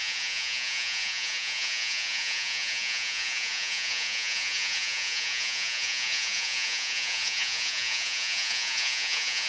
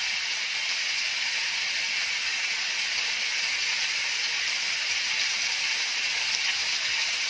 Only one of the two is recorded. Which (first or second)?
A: second